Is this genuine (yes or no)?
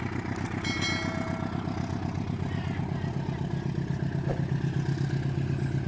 yes